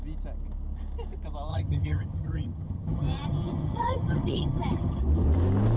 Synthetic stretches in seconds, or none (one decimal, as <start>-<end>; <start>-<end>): 1.5-5.0